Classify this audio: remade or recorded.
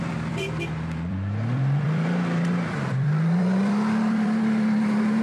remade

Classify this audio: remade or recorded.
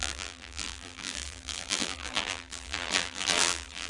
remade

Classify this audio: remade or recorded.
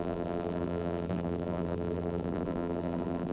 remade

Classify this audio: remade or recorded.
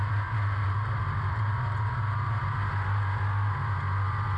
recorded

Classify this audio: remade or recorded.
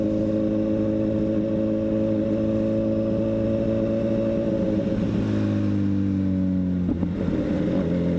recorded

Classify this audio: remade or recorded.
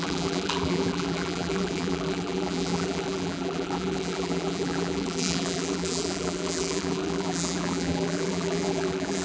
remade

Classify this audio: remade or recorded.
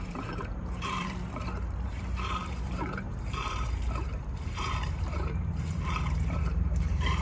remade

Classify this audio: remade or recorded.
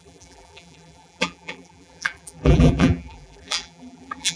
remade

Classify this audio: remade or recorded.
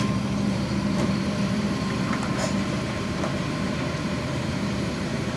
remade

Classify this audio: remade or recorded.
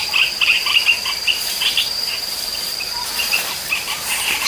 remade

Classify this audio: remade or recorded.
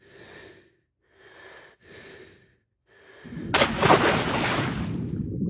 recorded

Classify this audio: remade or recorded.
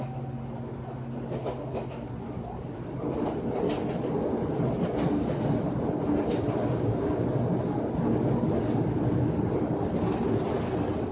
recorded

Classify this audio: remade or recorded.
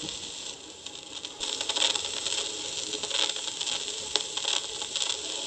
recorded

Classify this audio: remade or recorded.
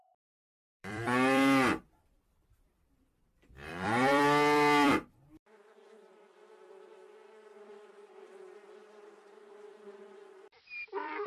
remade